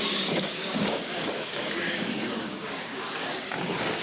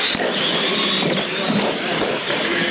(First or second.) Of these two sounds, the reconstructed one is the first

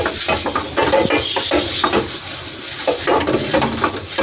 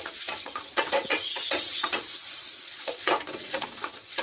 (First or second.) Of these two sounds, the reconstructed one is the second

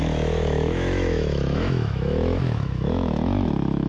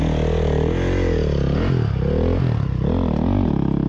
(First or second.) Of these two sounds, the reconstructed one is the first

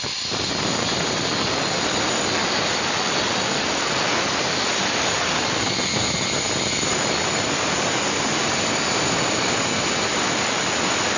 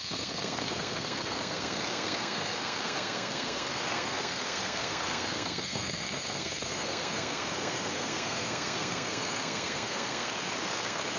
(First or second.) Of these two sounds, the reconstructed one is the second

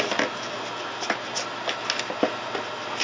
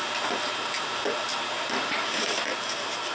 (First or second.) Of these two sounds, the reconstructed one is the second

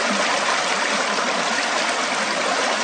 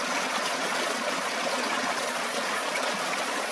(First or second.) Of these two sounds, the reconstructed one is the second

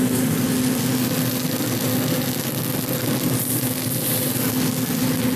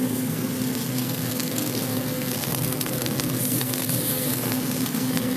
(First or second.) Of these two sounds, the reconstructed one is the second